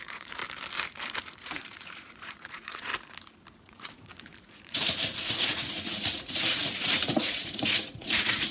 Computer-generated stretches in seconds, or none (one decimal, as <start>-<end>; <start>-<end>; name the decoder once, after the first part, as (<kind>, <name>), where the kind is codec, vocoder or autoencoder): 0.0-0.4 (vocoder, Vocos); 1.4-2.9; 3.6-8.5